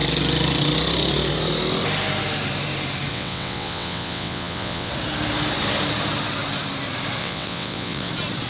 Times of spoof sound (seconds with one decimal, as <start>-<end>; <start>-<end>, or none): 3.1-4.9; 7.2-8.1